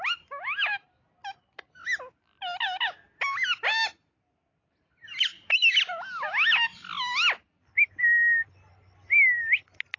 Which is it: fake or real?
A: real